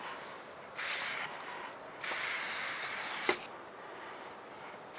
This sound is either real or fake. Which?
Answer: real